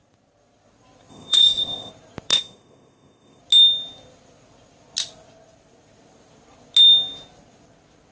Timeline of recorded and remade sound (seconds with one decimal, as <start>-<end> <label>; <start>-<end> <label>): 0.0-1.1 recorded; 1.1-1.9 remade; 1.9-2.3 recorded; 2.3-3.4 remade; 3.4-8.1 recorded